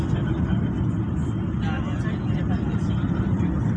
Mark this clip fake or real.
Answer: real